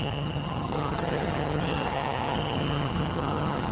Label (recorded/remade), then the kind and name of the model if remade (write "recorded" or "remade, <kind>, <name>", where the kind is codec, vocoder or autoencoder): remade, vocoder, HiFi-GAN